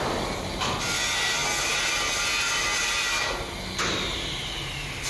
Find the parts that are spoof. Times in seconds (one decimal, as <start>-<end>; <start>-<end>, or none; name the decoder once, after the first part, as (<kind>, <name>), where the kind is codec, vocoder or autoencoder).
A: none